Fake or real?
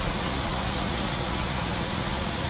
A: fake